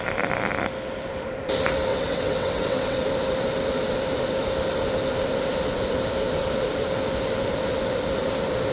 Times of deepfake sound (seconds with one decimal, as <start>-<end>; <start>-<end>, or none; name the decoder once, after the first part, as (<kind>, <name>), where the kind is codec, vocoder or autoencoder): 1.9-3.0 (vocoder, WaveNeXt)